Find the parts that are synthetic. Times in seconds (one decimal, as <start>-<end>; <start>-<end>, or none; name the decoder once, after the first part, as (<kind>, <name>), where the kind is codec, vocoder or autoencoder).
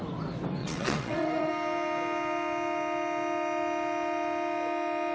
0.6-1.5 (vocoder, WaveNeXt)